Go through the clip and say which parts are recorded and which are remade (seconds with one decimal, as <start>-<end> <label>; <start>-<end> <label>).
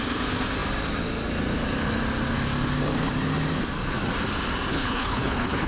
0.0-4.7 recorded; 4.7-5.7 remade